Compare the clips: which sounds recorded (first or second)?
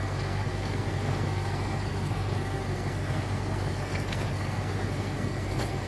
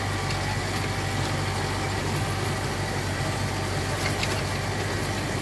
second